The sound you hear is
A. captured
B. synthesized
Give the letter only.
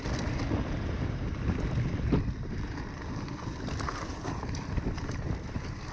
A